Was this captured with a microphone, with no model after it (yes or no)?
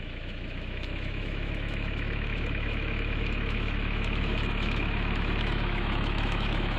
no